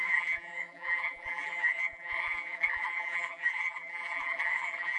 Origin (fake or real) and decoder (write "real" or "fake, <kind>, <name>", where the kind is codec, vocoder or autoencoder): fake, vocoder, BigVGAN v2